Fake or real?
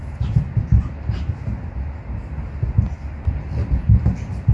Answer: real